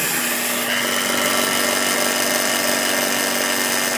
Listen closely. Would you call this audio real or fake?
real